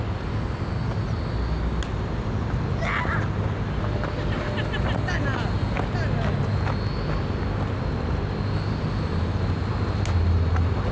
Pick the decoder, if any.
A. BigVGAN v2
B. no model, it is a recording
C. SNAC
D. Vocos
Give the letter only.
B